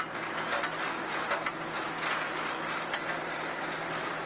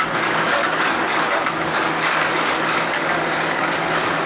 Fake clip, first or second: second